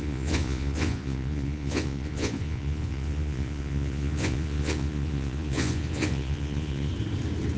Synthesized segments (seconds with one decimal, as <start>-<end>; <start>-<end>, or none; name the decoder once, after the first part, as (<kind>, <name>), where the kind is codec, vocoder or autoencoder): 0.0-6.9 (vocoder, Vocos)